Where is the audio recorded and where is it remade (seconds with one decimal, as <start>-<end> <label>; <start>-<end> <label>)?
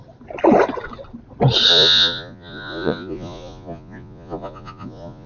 0.0-1.7 recorded; 1.7-5.3 remade